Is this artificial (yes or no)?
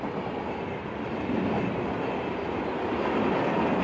no